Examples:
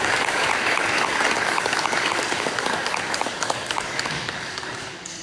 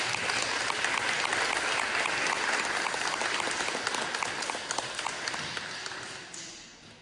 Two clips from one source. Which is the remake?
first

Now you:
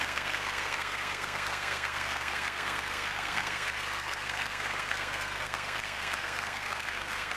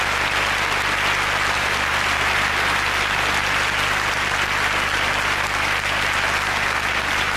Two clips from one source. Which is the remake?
first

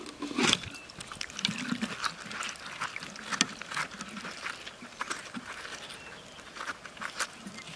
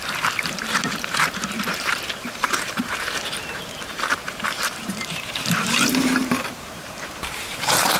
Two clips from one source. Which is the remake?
second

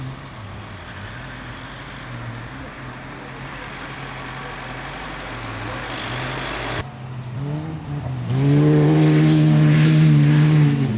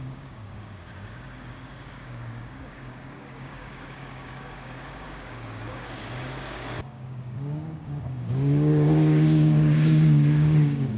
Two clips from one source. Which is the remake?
second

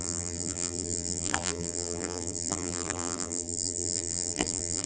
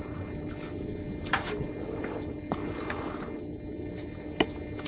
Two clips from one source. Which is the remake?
first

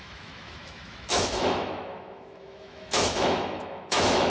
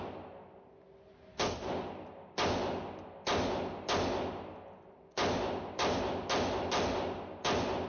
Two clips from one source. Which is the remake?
first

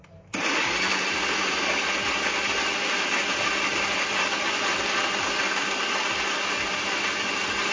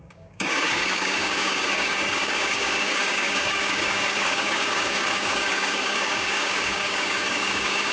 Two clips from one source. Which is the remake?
second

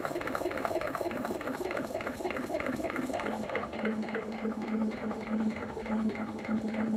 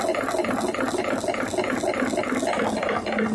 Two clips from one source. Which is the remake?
first